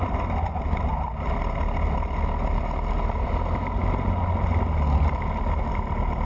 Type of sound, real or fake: real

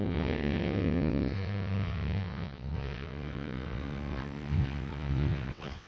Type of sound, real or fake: fake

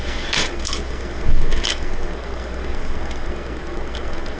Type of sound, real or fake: fake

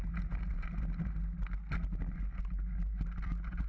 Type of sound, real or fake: real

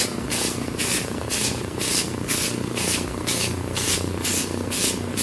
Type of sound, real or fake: fake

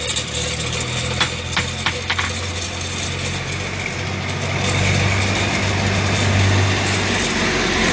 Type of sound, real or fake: real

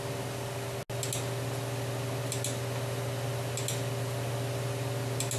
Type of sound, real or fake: real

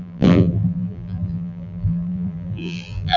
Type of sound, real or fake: fake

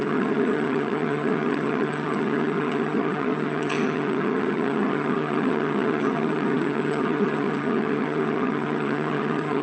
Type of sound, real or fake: fake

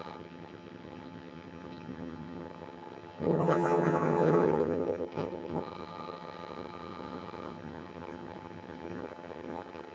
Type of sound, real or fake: fake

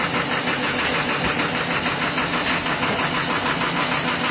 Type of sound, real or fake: real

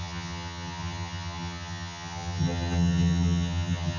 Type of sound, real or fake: fake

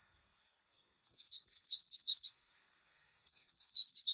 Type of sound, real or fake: fake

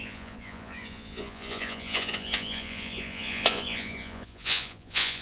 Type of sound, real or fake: fake